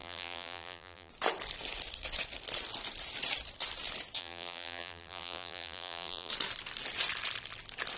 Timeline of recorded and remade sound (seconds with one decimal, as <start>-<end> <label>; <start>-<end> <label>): 0.0-1.1 remade; 1.1-4.2 recorded; 4.2-6.3 remade; 6.3-8.0 recorded